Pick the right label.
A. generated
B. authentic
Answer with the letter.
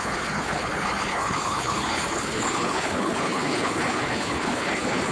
A